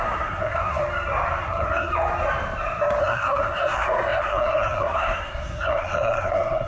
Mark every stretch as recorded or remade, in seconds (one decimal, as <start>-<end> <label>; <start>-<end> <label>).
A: 0.0-0.8 remade; 0.8-1.4 recorded; 1.4-1.9 remade; 1.9-3.0 recorded; 3.0-6.7 remade